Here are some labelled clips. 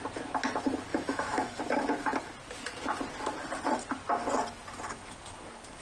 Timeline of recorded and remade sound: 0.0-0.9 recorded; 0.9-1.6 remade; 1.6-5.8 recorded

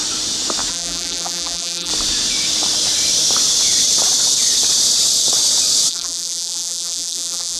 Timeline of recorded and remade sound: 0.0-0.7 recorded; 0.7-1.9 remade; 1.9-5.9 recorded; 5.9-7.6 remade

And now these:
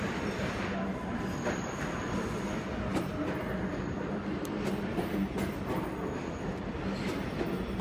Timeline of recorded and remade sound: 0.0-7.8 recorded

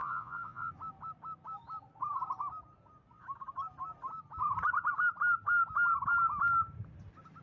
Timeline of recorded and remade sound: 0.0-0.7 remade; 0.7-7.4 recorded

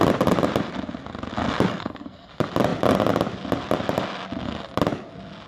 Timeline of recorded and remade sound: 0.0-1.7 recorded; 1.7-2.3 remade; 2.3-5.5 recorded

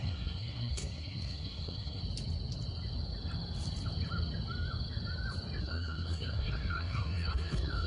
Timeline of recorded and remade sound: 0.0-2.0 remade; 2.0-5.6 recorded; 5.6-7.9 remade

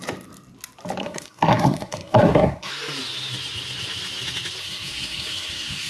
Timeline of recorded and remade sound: 0.0-1.0 recorded; 1.0-2.7 remade; 2.7-4.6 recorded; 4.6-5.9 remade

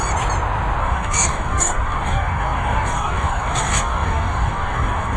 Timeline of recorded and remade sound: 0.0-0.8 recorded; 0.8-5.2 remade